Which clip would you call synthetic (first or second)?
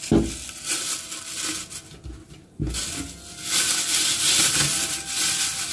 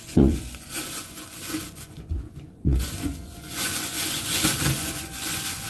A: second